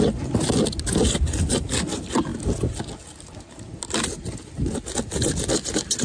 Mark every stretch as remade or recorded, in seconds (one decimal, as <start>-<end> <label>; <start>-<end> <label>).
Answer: 0.0-6.0 recorded